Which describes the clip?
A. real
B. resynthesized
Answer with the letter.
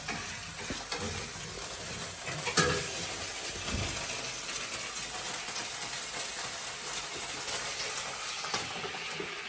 A